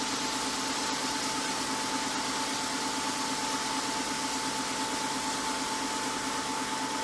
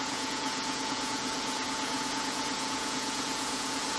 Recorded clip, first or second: first